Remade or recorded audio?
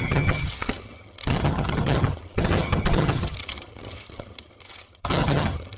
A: remade